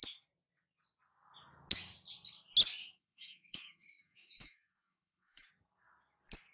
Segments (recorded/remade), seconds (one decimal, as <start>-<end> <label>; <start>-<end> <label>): 0.0-2.8 recorded; 2.8-5.5 remade; 5.5-6.5 recorded